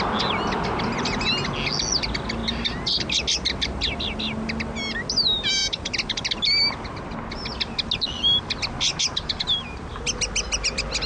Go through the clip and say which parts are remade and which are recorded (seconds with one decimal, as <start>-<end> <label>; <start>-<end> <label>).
0.0-11.1 recorded